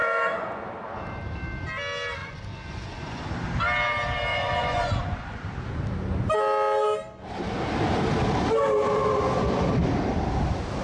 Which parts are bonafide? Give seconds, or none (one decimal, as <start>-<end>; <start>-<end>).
0.6-2.2; 3.3-4.3; 5.5-10.8

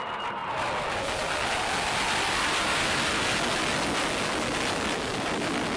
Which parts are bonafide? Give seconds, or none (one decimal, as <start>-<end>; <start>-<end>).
0.0-5.8

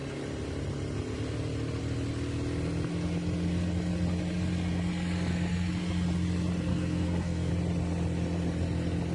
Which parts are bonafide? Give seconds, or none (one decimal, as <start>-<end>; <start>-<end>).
0.0-6.7; 7.5-9.1

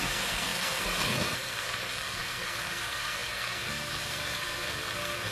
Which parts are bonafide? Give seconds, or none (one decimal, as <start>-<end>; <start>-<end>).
none

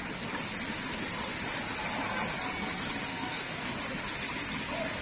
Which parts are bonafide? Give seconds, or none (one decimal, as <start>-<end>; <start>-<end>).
0.0-3.1; 3.7-5.0

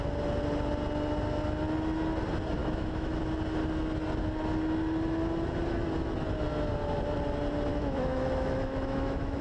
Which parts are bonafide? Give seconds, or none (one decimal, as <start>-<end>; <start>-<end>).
0.0-2.6; 3.2-7.7